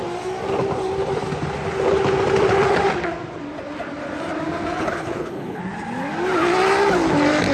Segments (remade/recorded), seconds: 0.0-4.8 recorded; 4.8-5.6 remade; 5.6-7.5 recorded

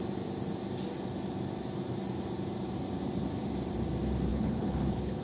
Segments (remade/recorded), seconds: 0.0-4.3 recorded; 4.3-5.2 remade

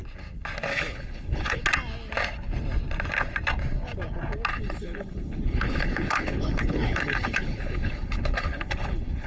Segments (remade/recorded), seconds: 0.0-0.7 recorded; 0.7-1.6 remade; 1.6-4.5 recorded; 4.5-9.3 remade

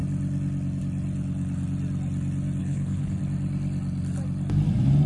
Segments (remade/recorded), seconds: 0.0-2.6 recorded; 2.6-3.2 remade; 3.2-5.1 recorded

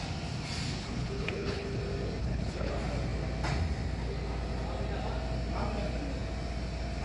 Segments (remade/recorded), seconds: 0.0-0.8 recorded; 0.8-1.8 remade; 1.8-2.2 recorded; 2.2-2.7 remade; 2.7-7.0 recorded

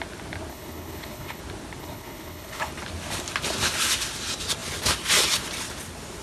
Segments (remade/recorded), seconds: 0.0-0.5 recorded; 0.5-1.4 remade; 1.4-1.8 recorded; 1.8-2.7 remade; 2.7-6.2 recorded

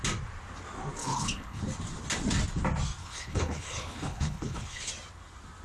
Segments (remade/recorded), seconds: 0.0-1.0 recorded; 1.0-1.6 remade; 1.6-3.0 recorded; 3.0-4.9 remade; 4.9-5.6 recorded